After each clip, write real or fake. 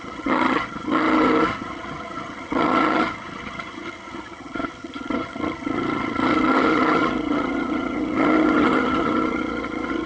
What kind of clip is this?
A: fake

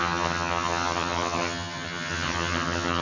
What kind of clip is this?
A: fake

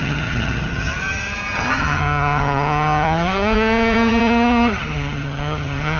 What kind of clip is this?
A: fake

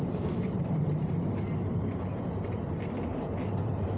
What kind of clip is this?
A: real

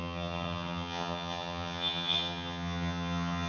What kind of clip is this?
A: fake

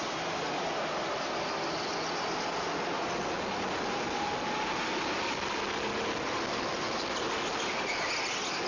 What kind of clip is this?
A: real